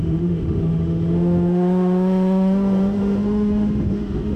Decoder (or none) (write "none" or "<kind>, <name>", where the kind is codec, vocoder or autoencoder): autoencoder, DAC-VAE